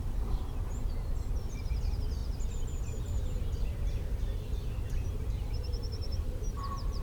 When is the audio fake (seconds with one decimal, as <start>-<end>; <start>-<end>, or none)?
0.0-0.4; 1.4-7.0